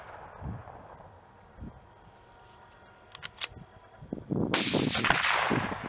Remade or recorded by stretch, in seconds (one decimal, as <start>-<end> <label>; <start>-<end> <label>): 0.0-5.9 recorded